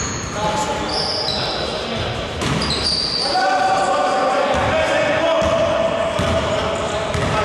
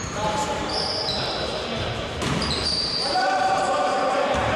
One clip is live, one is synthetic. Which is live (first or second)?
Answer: first